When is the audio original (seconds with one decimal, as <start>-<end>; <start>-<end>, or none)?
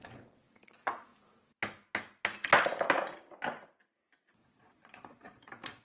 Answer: 1.1-4.3